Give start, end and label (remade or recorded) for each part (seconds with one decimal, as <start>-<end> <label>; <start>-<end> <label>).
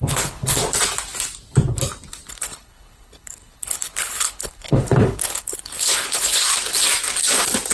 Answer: 0.0-0.6 remade; 0.6-2.3 recorded; 2.3-6.4 remade; 6.4-7.7 recorded